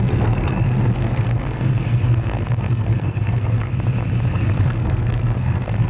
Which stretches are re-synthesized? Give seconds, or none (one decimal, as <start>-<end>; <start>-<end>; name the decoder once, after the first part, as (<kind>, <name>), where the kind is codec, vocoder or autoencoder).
0.0-3.7 (codec, SNAC); 4.3-5.9